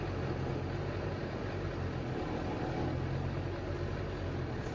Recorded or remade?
recorded